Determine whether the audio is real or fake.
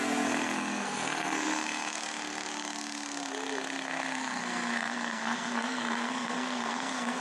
fake